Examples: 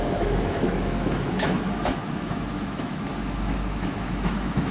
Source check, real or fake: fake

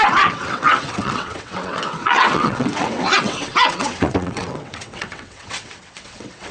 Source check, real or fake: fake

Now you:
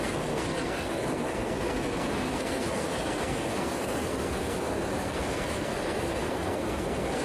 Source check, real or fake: fake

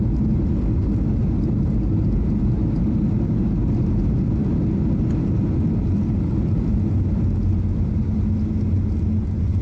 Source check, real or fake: real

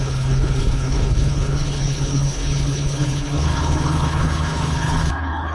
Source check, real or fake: fake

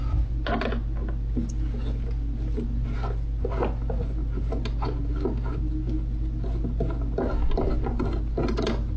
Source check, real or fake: real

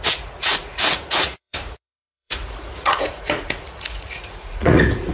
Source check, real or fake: fake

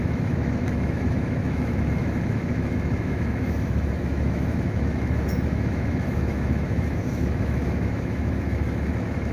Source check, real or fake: fake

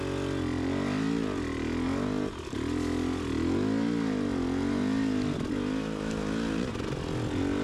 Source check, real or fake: real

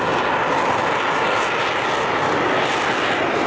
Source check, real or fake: real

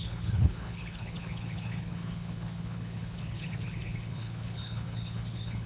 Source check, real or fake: fake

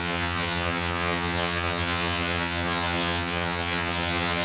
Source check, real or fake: fake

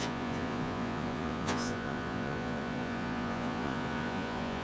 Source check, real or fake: fake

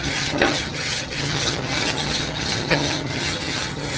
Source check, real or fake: fake